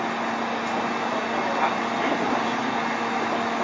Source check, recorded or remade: recorded